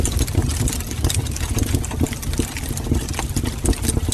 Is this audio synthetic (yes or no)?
no